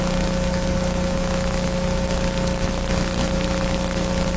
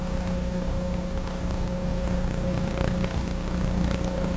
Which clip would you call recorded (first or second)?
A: first